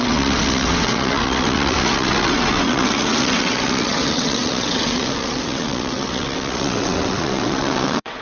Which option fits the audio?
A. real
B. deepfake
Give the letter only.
B